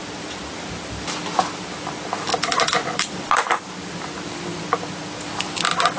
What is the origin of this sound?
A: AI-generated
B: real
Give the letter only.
B